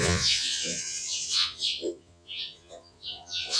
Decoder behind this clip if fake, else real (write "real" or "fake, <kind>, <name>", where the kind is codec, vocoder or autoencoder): fake, vocoder, Vocos